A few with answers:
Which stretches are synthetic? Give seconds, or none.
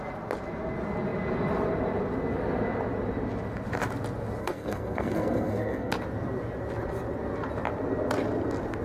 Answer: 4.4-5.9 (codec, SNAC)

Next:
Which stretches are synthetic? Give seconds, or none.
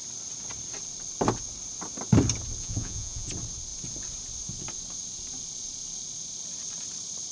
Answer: 2.6-3.3 (vocoder, Vocos)